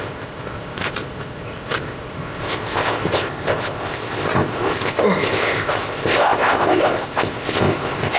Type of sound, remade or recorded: remade